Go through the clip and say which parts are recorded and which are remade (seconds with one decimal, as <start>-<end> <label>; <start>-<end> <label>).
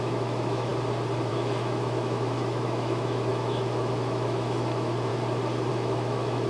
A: 0.0-0.7 remade; 0.7-1.3 recorded; 1.3-5.1 remade; 5.1-5.7 recorded; 5.7-6.5 remade